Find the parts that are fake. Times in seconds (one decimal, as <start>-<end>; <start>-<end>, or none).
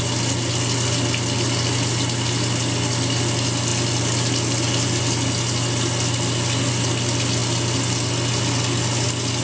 none